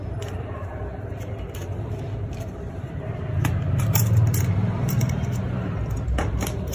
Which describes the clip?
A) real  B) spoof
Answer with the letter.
B